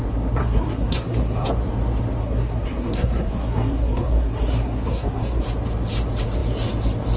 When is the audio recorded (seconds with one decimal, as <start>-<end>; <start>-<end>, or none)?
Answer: 0.0-0.4; 1.5-2.2; 5.4-7.2